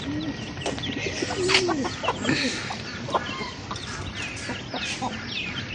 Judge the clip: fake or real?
real